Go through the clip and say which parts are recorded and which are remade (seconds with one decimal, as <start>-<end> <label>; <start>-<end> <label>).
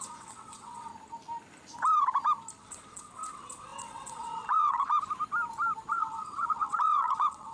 0.0-0.9 remade; 0.9-2.6 recorded; 2.6-4.9 remade; 4.9-5.9 recorded; 5.9-7.5 remade